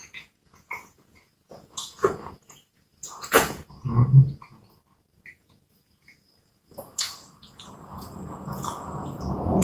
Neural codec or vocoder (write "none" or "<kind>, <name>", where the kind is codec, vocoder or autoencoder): vocoder, Vocos